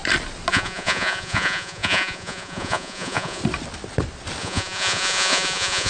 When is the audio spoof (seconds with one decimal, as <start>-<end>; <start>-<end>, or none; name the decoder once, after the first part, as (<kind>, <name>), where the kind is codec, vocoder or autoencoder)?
0.5-3.4 (vocoder, Vocos); 4.4-5.9